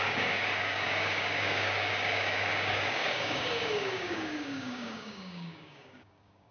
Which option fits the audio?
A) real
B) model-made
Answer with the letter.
B